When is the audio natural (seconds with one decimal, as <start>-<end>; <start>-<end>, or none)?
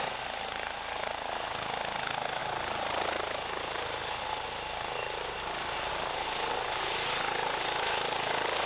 0.0-8.7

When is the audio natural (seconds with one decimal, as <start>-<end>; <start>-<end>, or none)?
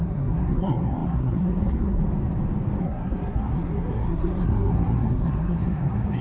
2.0-2.8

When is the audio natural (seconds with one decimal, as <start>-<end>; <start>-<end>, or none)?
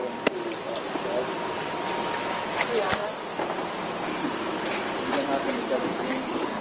0.0-5.9